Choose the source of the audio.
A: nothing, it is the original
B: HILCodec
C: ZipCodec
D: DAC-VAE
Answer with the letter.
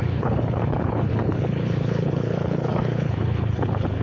B